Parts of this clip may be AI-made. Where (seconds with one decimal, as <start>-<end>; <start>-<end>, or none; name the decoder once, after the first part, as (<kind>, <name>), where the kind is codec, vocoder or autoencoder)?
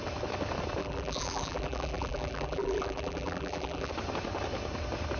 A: 0.8-3.9 (vocoder, BigVGAN v2)